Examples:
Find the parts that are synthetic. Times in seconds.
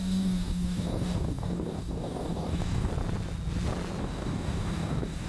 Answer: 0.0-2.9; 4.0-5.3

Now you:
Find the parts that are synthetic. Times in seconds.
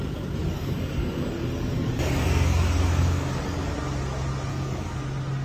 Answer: 0.5-3.7; 4.5-5.0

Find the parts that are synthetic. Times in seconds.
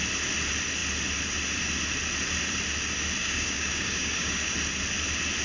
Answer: 3.2-4.5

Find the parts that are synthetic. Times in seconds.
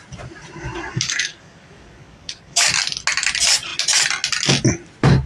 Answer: 0.9-2.7